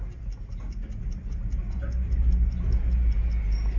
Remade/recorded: recorded